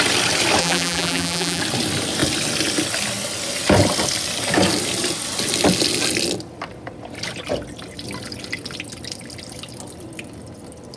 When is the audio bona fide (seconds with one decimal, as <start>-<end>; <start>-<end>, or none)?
0.0-0.6; 1.6-11.0